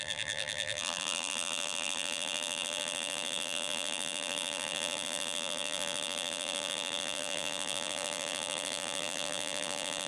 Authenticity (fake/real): fake